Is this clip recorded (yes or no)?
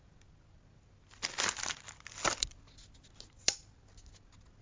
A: yes